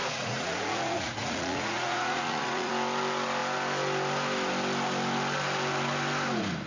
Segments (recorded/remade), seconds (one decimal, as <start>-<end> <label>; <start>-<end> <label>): 0.0-2.7 remade; 2.7-6.7 recorded